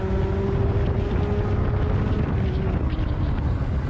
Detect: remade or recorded recorded